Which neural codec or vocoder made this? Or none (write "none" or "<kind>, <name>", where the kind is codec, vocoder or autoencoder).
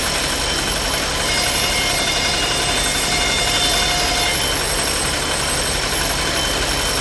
none